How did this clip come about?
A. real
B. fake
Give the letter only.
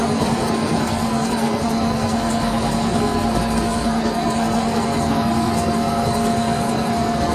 B